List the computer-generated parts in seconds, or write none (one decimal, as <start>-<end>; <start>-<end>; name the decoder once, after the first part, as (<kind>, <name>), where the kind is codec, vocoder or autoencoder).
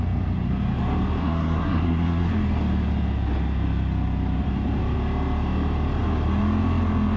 1.2-2.3 (codec, SNAC)